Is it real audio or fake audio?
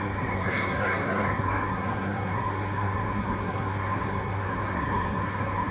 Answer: fake